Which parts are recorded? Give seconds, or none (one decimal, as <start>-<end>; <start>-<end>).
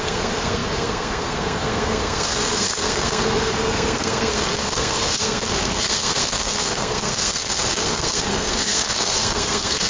none